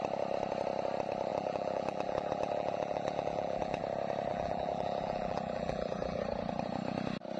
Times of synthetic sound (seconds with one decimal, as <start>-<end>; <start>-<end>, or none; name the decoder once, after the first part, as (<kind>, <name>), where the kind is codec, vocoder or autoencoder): 1.3-3.8 (vocoder, BigVGAN v2); 4.3-6.2